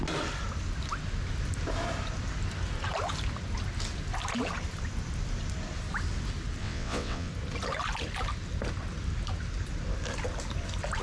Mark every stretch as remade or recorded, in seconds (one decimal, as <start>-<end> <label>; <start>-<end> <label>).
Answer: 0.0-6.6 recorded; 6.6-7.3 remade; 7.3-11.0 recorded

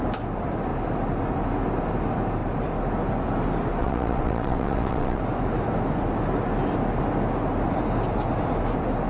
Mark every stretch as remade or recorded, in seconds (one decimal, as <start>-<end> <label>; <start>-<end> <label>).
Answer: 0.0-3.8 recorded; 3.8-5.2 remade; 5.2-9.1 recorded